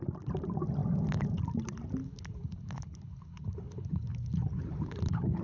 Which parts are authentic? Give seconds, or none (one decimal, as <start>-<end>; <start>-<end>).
0.0-2.0